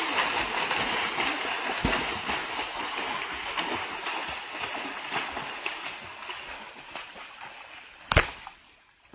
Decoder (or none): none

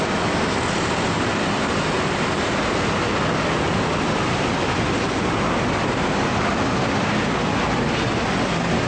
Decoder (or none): none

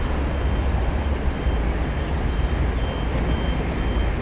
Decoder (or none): none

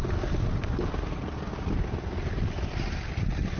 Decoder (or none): none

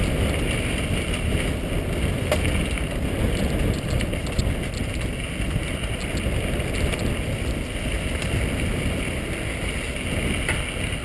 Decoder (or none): none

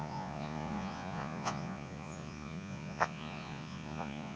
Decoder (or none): vocoder, Vocos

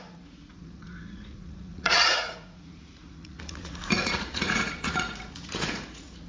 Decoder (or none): vocoder, Vocos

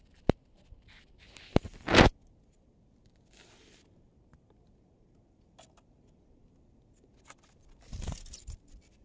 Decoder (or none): none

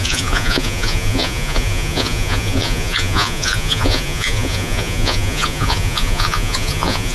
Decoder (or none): vocoder, Vocos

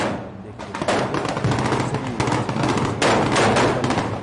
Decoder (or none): none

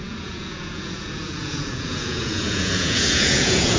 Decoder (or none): vocoder, Vocos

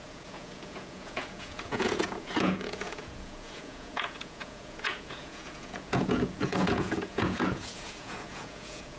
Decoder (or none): vocoder, Vocos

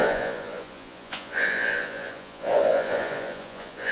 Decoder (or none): vocoder, Vocos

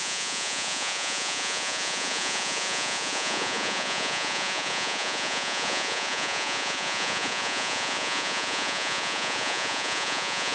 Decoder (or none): vocoder, Vocos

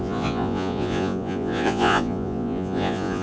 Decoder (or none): vocoder, Vocos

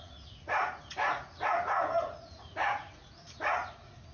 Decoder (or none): vocoder, Vocos